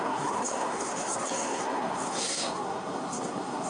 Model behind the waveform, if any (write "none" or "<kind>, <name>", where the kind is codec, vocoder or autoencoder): codec, SNAC